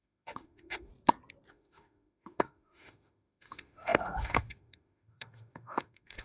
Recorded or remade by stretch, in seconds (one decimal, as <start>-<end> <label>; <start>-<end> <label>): 0.0-0.9 remade; 0.9-1.5 recorded; 1.5-6.2 remade